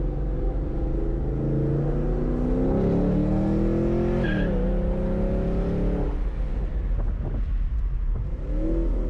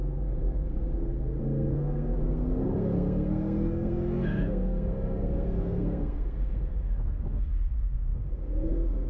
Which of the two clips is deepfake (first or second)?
second